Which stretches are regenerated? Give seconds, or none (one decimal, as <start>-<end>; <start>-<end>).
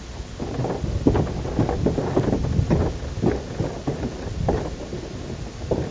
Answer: none